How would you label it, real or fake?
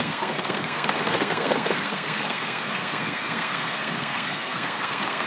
fake